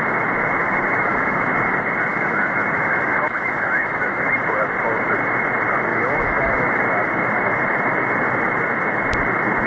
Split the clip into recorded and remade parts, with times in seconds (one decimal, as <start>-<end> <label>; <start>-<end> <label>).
0.0-0.6 recorded; 0.6-1.6 remade; 1.6-2.1 recorded; 2.1-4.3 remade; 4.3-5.9 recorded; 5.9-6.8 remade; 6.8-9.7 recorded